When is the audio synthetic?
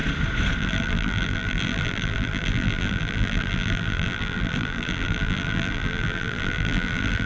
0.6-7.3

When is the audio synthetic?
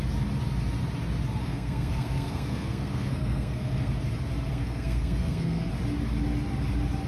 1.4-3.9; 4.5-5.7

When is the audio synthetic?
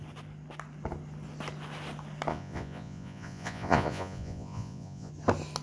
2.3-5.1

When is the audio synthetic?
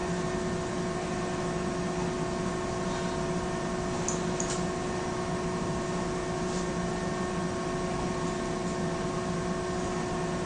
0.0-2.5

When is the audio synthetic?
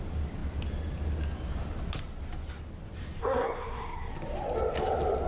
3.2-4.1